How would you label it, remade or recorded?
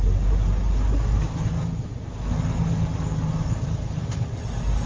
recorded